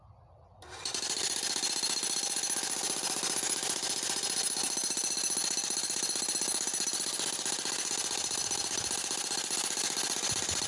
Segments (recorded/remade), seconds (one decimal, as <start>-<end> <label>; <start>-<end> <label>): 0.0-10.7 recorded